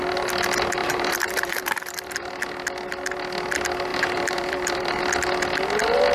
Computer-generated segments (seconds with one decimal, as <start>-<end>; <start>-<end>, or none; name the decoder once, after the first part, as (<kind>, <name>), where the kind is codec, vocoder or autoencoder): 0.8-2.3 (vocoder, BigVGAN v2); 3.9-5.0